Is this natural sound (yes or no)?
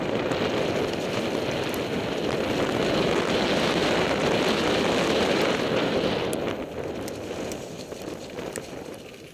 yes